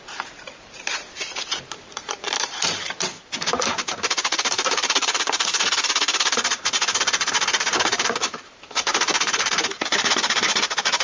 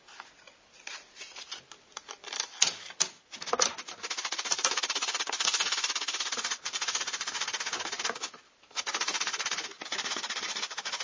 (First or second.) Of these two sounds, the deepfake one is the first